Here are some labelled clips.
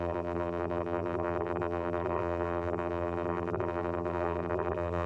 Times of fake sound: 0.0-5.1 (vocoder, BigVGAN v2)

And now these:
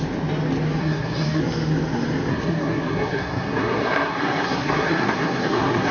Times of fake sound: 0.8-1.4 (codec, SNAC); 2.3-5.9

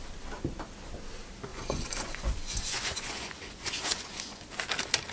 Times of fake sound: 1.5-4.5 (vocoder, Vocos)

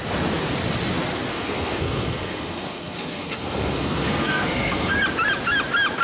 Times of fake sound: 1.3-4.9 (codec, SNAC)